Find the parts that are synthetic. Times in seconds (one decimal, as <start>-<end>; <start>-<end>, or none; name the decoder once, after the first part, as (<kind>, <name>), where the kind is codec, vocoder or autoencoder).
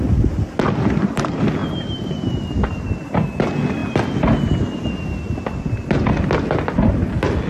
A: none